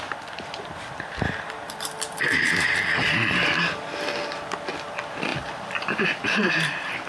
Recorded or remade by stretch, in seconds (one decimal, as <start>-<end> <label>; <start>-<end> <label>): 0.0-5.3 remade; 5.3-6.0 recorded; 6.0-7.1 remade